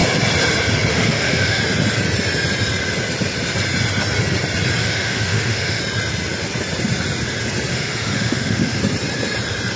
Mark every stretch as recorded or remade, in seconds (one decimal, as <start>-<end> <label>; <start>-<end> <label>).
0.0-0.9 recorded; 0.9-1.6 remade; 1.6-4.8 recorded; 4.8-5.8 remade; 5.8-7.7 recorded; 7.7-8.8 remade; 8.8-9.8 recorded